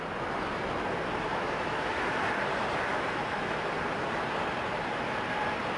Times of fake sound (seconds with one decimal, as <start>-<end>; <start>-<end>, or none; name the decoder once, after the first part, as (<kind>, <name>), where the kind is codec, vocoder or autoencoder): 1.3-2.3 (autoencoder, DAC-VAE); 2.9-3.5